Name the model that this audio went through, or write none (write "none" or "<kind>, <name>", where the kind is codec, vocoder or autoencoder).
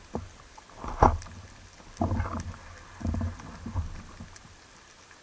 none